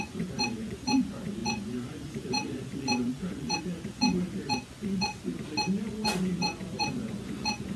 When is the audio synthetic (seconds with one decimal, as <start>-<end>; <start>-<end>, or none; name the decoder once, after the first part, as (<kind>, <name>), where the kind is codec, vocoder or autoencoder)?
0.0-5.1 (vocoder, Vocos); 5.9-7.8